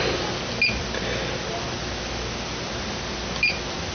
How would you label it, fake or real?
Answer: real